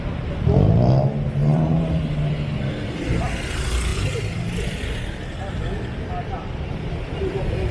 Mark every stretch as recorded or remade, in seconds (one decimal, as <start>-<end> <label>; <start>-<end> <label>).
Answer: 0.0-1.4 recorded; 1.4-2.3 remade; 2.3-7.7 recorded